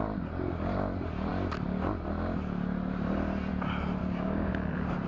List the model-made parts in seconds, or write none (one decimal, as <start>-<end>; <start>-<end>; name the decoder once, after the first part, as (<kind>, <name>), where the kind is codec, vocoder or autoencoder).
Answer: 4.0-4.5 (codec, DAC)